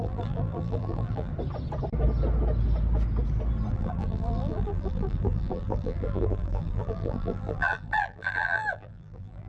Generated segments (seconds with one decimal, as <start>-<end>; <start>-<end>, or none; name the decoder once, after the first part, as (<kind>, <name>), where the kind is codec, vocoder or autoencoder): 0.0-1.3 (vocoder, BigVGAN v2); 3.7-9.5